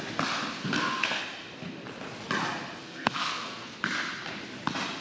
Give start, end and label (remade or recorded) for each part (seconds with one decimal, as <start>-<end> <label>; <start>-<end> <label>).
0.0-0.6 recorded; 0.6-1.2 remade; 1.2-2.8 recorded; 2.8-3.8 remade; 3.8-5.0 recorded